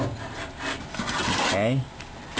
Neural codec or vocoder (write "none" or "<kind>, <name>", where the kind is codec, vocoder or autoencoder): none